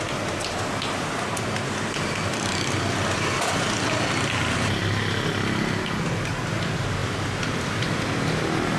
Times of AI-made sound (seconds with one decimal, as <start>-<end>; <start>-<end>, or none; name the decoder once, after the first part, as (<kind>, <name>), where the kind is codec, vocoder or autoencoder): 7.0-8.0 (vocoder, BigVGAN v2)

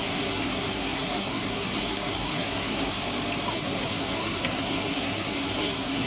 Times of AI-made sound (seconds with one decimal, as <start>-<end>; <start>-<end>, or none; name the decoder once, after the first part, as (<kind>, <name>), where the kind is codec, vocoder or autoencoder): 0.0-3.0 (codec, SNAC); 3.5-6.1

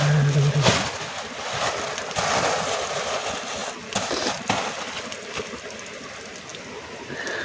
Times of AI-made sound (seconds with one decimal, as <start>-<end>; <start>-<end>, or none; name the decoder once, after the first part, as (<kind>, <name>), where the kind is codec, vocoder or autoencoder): none

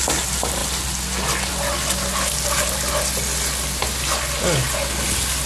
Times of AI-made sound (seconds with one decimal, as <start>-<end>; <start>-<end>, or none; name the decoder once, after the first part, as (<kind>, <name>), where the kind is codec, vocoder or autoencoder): none

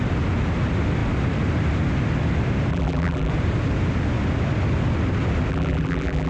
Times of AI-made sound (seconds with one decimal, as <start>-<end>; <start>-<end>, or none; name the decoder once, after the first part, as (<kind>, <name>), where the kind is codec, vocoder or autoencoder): 2.7-3.3 (vocoder, BigVGAN v2); 5.5-6.3

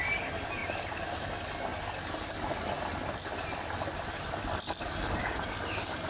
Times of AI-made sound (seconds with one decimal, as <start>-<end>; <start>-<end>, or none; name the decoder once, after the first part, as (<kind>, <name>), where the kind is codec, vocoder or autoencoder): 0.6-1.2 (vocoder, BigVGAN v2); 1.7-5.2

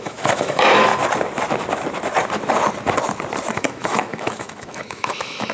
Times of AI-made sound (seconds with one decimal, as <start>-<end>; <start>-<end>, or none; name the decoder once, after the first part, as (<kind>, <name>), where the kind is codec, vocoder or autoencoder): 0.0-0.9 (autoencoder, DAC-VAE); 3.5-5.5